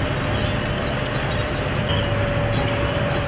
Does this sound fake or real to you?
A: real